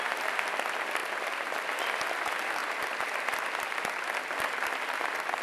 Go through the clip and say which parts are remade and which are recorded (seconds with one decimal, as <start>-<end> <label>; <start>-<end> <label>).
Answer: 0.0-5.4 recorded